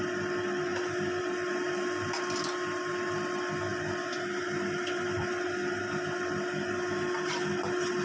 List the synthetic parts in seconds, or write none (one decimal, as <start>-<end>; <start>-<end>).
none